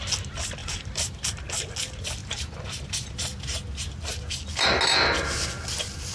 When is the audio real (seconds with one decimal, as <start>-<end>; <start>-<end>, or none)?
0.0-0.6; 1.3-2.2; 3.9-6.1